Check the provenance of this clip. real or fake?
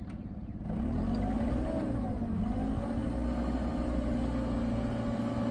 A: real